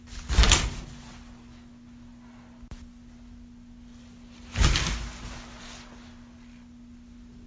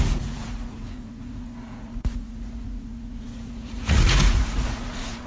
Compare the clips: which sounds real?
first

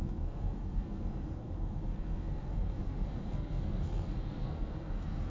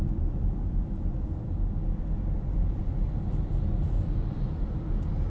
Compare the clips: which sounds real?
second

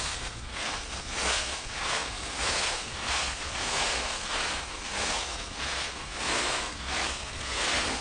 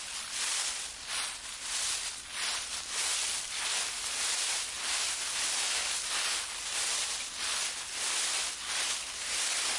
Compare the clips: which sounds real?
second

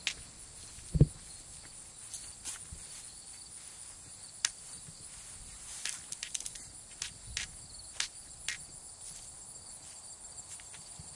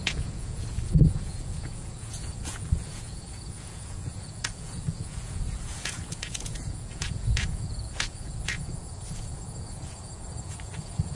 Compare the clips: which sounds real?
first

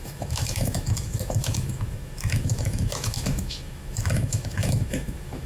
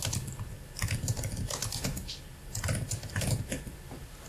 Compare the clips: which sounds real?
second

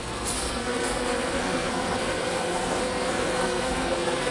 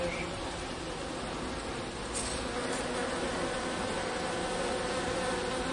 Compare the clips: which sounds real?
second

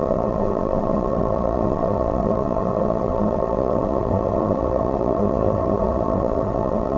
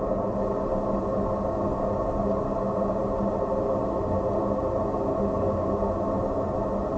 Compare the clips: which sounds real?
second